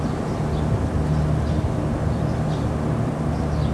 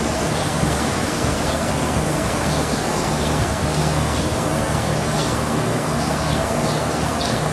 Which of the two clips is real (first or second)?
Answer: first